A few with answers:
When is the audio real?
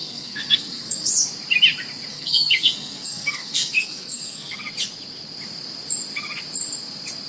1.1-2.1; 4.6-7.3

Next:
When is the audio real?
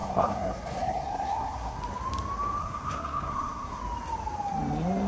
1.8-2.6; 3.8-5.1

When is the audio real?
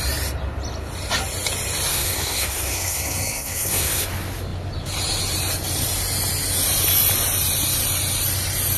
0.0-1.9; 4.1-8.8